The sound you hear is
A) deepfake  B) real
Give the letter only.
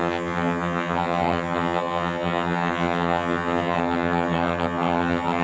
A